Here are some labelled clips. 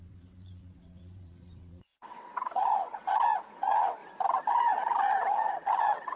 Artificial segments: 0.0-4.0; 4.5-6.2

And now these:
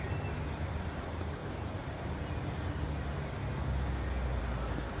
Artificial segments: none

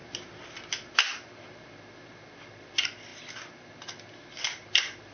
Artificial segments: none

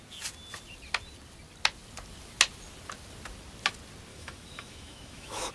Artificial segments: 4.1-5.5

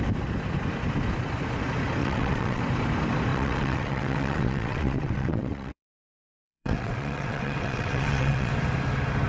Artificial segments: 2.0-2.6; 3.3-8.5